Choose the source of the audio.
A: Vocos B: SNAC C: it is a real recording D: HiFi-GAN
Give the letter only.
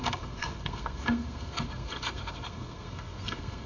B